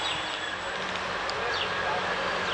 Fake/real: real